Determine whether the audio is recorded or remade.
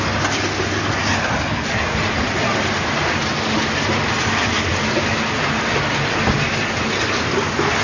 recorded